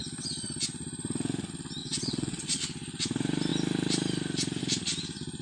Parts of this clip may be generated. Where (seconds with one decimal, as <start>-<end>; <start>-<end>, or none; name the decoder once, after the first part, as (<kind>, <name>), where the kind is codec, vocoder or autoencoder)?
1.8-2.6 (vocoder, WaveNeXt)